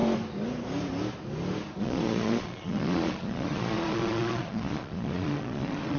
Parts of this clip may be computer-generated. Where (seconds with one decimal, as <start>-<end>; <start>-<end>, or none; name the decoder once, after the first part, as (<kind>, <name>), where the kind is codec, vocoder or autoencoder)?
1.8-6.0 (vocoder, Vocos)